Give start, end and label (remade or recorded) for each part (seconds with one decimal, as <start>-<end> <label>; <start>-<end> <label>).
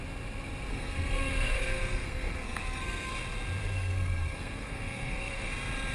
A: 0.0-0.7 recorded; 0.7-3.1 remade; 3.1-3.6 recorded; 3.6-5.5 remade; 5.5-5.9 recorded